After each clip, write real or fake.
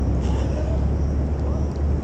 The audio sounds real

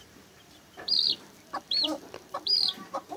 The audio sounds fake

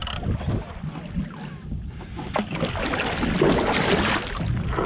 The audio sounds real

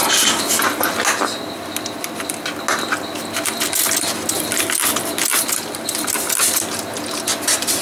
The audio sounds real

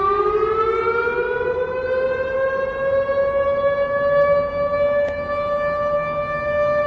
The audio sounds real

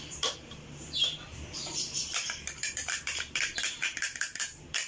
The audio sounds fake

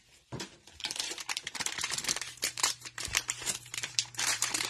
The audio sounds fake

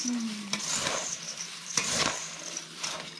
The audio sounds fake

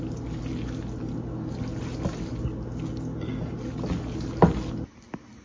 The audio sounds real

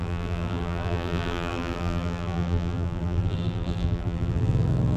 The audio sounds fake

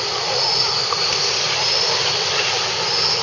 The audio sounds real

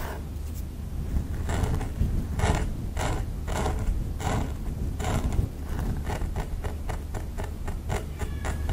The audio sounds real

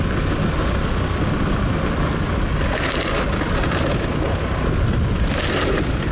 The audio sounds real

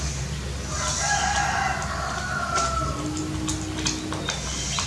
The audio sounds real